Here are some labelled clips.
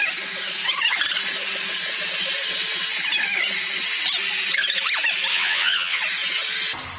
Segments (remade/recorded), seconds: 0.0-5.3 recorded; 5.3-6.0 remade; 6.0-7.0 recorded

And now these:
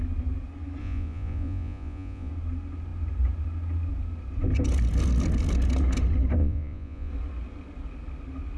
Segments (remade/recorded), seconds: 0.0-0.8 recorded; 0.8-2.3 remade; 2.3-6.4 recorded; 6.4-7.1 remade; 7.1-8.6 recorded

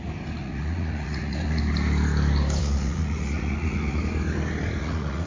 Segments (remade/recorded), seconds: 0.0-0.4 recorded; 0.4-1.6 remade; 1.6-2.6 recorded; 2.6-4.0 remade; 4.0-4.8 recorded; 4.8-5.3 remade

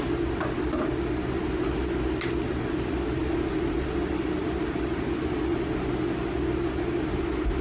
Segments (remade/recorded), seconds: 0.0-7.6 recorded

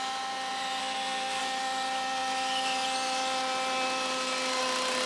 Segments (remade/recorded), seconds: 0.0-0.8 recorded; 0.8-1.4 remade; 1.4-5.1 recorded

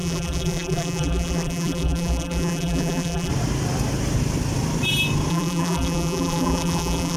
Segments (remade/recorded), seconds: 0.0-3.3 remade; 3.3-5.3 recorded; 5.3-7.2 remade